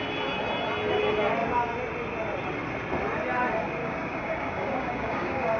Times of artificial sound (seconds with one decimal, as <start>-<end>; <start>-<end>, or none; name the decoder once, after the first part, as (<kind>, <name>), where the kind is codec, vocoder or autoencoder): 3.8-5.6 (codec, DAC)